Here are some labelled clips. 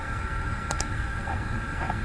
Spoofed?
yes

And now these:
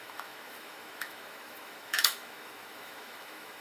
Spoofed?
yes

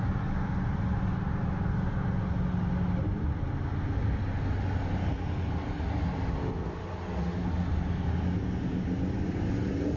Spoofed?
no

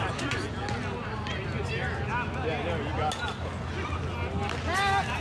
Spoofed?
no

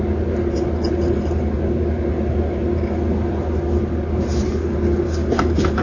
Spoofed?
no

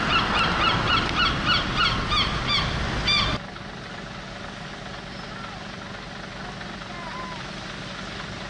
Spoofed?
no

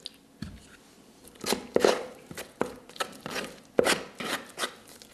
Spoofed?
no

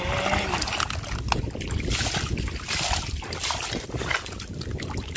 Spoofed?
no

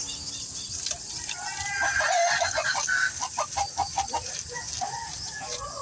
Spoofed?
no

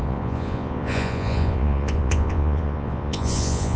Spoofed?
yes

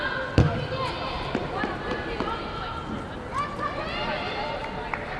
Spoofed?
no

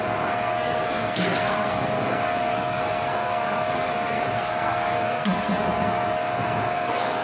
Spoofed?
yes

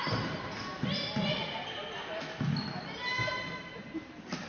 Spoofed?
no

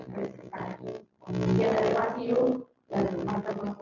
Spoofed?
no